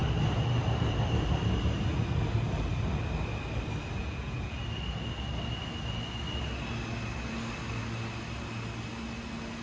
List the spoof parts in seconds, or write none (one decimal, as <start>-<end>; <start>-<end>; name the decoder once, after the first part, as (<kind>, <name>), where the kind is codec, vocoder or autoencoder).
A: 4.0-4.6 (vocoder, Vocos)

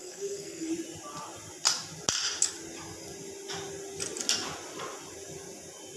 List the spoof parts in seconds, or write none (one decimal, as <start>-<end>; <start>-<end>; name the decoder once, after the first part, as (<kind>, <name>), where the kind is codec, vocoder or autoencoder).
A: 0.0-0.7 (codec, SNAC)

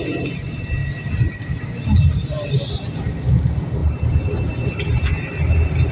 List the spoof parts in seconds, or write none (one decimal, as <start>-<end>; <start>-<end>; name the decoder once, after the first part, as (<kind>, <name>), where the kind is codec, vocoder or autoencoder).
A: none